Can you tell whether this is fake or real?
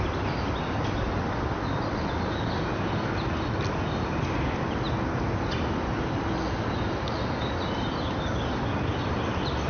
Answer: real